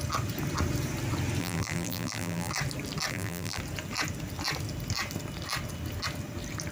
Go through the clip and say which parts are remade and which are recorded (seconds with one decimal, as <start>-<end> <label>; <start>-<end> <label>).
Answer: 0.0-1.4 recorded; 1.4-2.5 remade; 2.5-3.1 recorded; 3.1-3.6 remade; 3.6-6.7 recorded